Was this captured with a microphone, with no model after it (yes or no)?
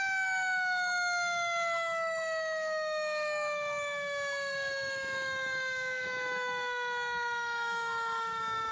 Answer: no